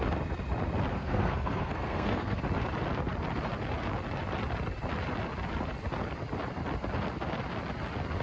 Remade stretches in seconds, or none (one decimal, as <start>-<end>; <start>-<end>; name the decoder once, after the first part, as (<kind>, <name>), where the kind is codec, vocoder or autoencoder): 0.9-2.4 (codec, SNAC)